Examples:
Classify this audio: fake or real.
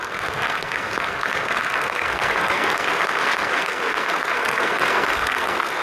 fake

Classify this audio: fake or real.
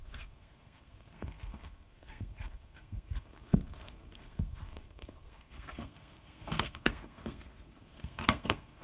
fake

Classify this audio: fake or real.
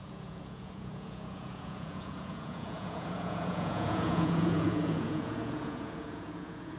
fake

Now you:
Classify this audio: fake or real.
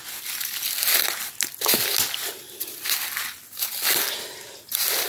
real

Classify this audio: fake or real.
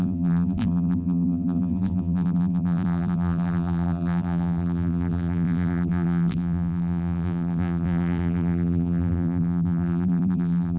fake